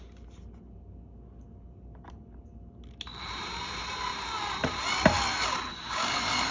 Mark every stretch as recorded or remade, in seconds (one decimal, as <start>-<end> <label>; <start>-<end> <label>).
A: 0.0-5.7 recorded; 5.7-6.5 remade